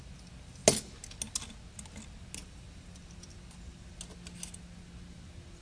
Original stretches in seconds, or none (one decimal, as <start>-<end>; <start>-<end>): 0.0-2.4; 3.9-5.6